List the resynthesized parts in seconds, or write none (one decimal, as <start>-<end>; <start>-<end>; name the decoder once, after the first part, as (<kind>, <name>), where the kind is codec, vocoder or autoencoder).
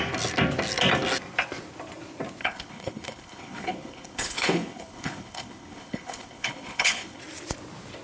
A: 2.4-7.2 (codec, HILCodec)